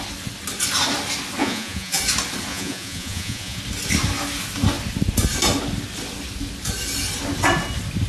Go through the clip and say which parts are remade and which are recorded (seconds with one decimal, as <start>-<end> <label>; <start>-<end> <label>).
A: 0.0-1.4 recorded; 1.4-2.0 remade; 2.0-2.5 recorded; 2.5-3.6 remade; 3.6-8.1 recorded